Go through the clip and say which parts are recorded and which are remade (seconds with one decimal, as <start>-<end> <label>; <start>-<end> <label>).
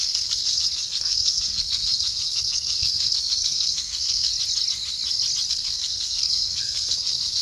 0.0-4.3 remade; 4.3-5.5 recorded; 5.5-7.4 remade